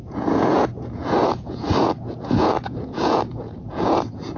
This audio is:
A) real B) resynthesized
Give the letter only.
B